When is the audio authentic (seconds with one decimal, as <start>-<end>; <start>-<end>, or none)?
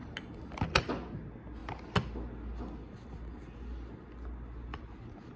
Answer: 0.0-5.4